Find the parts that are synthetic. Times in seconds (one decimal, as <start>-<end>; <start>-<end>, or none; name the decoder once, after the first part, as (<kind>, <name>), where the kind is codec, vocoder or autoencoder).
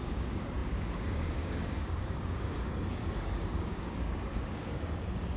0.0-5.4 (codec, DAC)